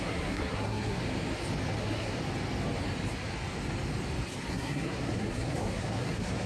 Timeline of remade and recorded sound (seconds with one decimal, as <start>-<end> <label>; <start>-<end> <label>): 0.0-1.0 remade; 1.0-1.8 recorded; 1.8-2.2 remade; 2.2-4.5 recorded; 4.5-6.5 remade

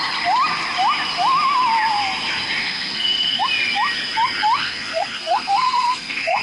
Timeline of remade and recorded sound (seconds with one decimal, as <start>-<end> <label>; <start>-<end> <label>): 0.0-2.6 recorded; 2.6-3.4 remade; 3.4-4.6 recorded; 4.6-6.4 remade

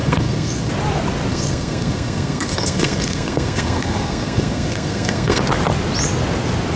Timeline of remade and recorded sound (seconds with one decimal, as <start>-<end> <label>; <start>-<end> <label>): 0.0-0.7 remade; 0.7-1.3 recorded; 1.3-5.4 remade; 5.4-6.8 recorded

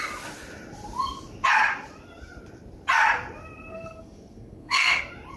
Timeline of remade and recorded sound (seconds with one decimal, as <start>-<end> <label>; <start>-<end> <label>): 0.0-3.7 recorded; 3.7-5.0 remade; 5.0-5.4 recorded

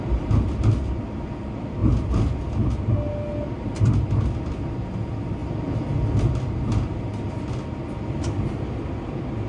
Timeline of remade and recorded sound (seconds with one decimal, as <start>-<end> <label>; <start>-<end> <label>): 0.0-9.5 recorded

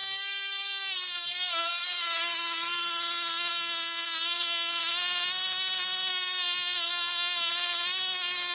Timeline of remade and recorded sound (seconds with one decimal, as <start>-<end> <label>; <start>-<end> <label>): 0.0-1.7 remade; 1.7-3.5 recorded; 3.5-4.8 remade; 4.8-6.1 recorded; 6.1-7.5 remade; 7.5-8.5 recorded

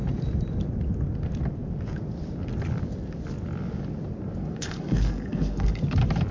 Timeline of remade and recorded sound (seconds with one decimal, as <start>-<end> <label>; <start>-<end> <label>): 0.0-4.4 recorded; 4.4-5.7 remade; 5.7-6.3 recorded